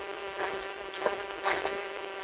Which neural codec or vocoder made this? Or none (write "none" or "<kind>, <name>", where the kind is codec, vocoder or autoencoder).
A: none